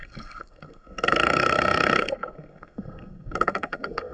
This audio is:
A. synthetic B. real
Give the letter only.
A